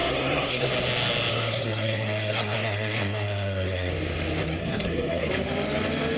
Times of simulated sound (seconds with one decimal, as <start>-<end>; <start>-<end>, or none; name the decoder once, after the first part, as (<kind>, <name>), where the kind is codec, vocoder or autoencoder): 0.0-0.7 (codec, SNAC); 1.3-3.9; 4.6-5.3